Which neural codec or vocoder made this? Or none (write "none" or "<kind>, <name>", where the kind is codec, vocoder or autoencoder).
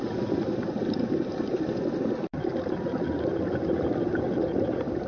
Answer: none